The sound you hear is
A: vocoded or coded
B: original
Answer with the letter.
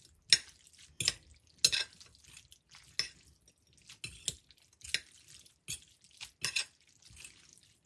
B